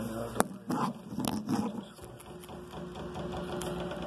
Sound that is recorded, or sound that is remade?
recorded